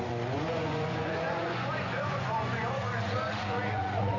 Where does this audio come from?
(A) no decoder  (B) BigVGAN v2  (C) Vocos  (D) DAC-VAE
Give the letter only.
C